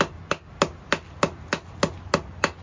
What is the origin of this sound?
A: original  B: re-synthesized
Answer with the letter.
A